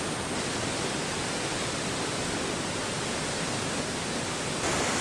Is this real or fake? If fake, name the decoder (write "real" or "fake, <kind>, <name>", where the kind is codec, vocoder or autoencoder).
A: real